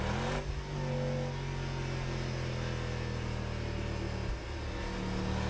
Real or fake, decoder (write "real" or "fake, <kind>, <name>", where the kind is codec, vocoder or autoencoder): real